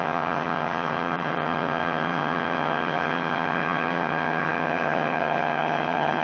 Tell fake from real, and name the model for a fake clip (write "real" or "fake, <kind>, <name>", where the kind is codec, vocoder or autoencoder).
fake, vocoder, HiFi-GAN